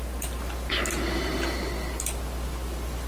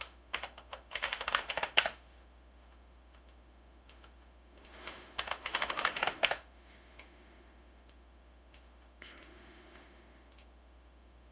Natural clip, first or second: first